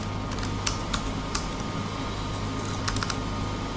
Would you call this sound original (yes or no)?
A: yes